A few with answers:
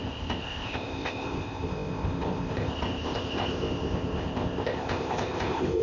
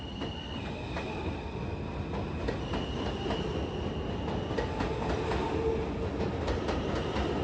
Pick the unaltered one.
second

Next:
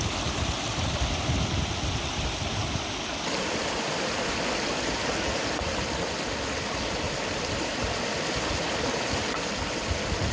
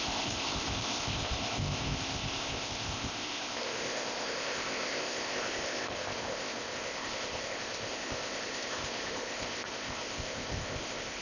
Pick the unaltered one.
first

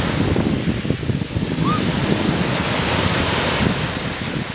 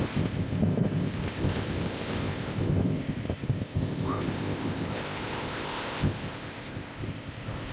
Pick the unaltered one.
first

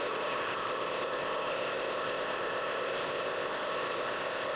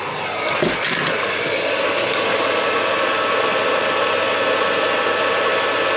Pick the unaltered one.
second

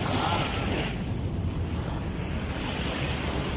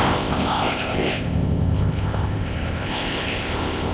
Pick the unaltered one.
first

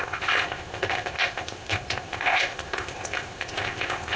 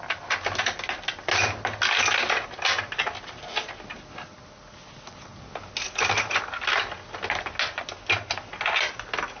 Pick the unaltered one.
second